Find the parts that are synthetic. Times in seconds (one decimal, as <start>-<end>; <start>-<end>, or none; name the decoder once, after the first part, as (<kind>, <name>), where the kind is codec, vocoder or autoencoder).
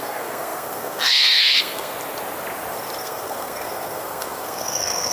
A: 0.0-1.9 (codec, SNAC); 3.0-5.1